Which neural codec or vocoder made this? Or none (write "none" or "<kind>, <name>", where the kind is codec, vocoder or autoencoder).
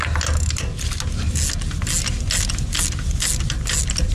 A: none